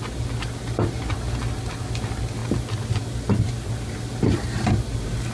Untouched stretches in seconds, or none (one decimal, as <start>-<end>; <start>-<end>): 0.0-5.3